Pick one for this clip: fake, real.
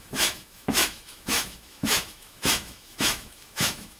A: fake